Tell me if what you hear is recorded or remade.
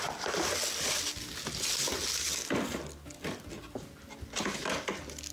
recorded